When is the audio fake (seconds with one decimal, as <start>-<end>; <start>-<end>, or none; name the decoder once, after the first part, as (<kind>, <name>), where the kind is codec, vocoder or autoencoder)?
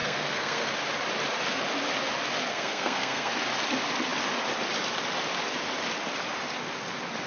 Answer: 0.0-0.7 (codec, SNAC); 2.5-3.3